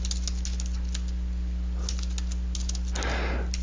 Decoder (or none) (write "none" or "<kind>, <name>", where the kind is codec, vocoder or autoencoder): none